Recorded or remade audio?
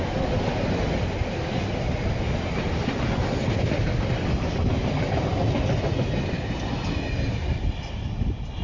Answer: recorded